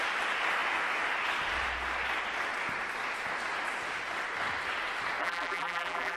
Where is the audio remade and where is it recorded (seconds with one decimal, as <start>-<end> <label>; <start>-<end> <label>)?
0.0-5.2 recorded; 5.2-6.2 remade